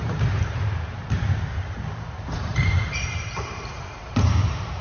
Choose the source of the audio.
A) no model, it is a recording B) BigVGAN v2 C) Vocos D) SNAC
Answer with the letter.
B